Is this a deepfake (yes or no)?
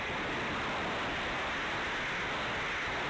no